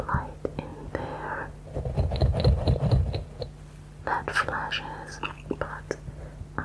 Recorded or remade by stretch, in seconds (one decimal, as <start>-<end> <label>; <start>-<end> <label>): 0.0-6.6 recorded